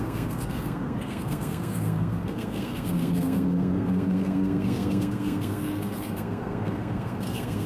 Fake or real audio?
fake